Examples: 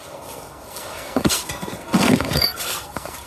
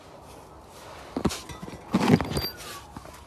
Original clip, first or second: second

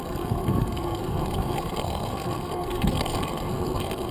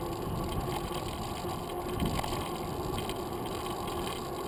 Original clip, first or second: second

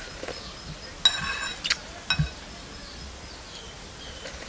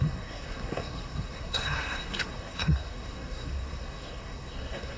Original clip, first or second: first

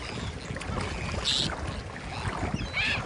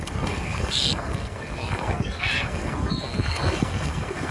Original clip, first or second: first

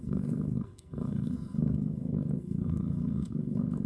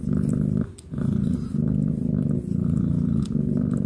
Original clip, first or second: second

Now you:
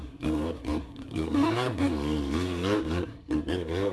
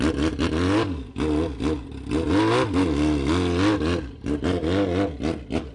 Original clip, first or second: second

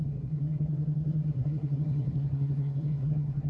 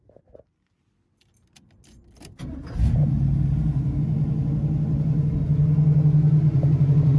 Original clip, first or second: second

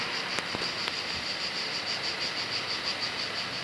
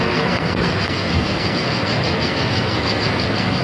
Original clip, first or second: first